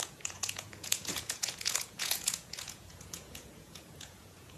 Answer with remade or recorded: remade